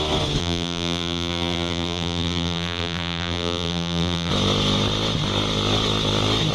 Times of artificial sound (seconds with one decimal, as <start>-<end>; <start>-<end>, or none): 0.4-4.3